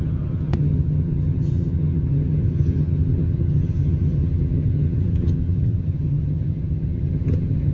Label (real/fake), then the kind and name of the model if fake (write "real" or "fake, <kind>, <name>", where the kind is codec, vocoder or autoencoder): fake, vocoder, HiFi-GAN